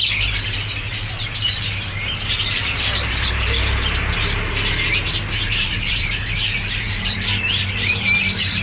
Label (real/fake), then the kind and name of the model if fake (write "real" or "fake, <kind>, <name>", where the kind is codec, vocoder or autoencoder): fake, vocoder, BigVGAN v2